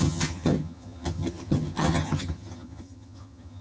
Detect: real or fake fake